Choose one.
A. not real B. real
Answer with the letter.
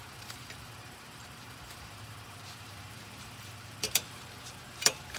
A